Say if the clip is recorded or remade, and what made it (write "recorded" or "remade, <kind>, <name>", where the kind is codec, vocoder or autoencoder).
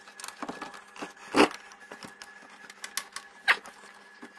recorded